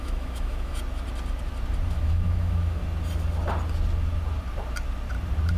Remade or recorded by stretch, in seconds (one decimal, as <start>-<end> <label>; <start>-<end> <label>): 0.0-0.7 remade; 0.7-1.9 recorded; 1.9-2.8 remade; 2.8-5.6 recorded